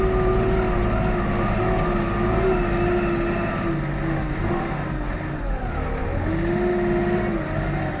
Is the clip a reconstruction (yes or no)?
no